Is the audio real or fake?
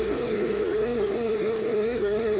fake